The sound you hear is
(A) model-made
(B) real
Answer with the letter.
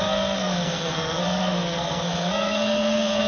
A